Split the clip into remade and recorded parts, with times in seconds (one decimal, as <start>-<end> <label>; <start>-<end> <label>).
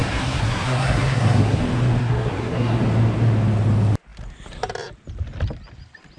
0.0-1.6 remade; 1.6-2.0 recorded; 2.0-2.8 remade; 2.8-6.2 recorded